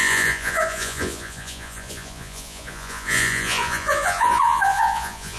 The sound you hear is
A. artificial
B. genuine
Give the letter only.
A